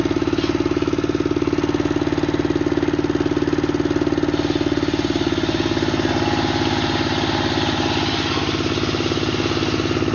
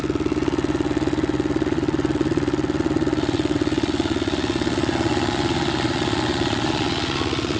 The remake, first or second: second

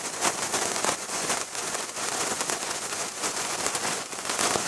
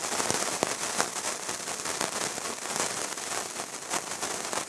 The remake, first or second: first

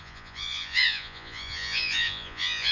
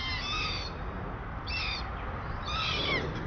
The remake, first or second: first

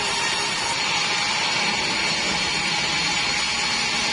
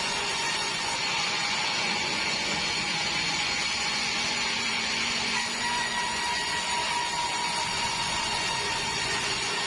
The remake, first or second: second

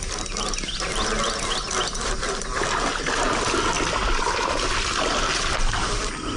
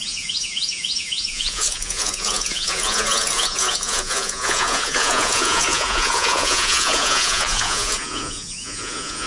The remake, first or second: second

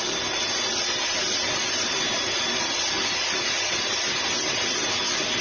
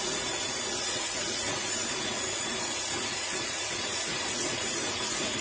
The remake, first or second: second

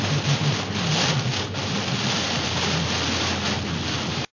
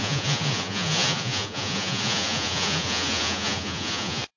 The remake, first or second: second